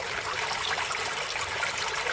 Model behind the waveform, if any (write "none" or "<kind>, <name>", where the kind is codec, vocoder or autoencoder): none